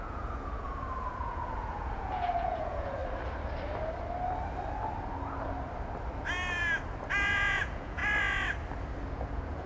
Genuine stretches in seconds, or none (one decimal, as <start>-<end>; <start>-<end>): 3.0-7.1; 8.0-9.1